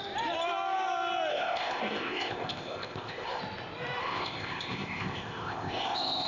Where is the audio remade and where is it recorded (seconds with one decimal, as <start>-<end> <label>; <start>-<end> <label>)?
0.0-1.3 recorded; 1.3-3.4 remade; 3.4-4.0 recorded; 4.0-6.3 remade